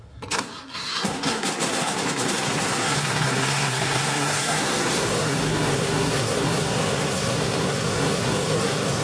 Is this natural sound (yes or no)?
no